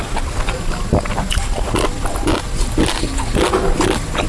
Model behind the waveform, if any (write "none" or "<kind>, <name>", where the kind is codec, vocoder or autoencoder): none